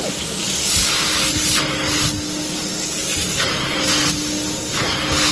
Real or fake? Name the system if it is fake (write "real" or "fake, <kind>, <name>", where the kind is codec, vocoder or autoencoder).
real